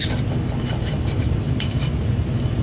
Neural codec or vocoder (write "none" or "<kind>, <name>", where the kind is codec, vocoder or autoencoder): vocoder, BigVGAN v2